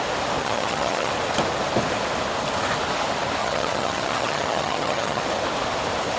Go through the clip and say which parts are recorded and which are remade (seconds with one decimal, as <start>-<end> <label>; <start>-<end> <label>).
0.0-0.4 recorded; 0.4-1.1 remade; 1.1-3.4 recorded; 3.4-5.2 remade; 5.2-6.2 recorded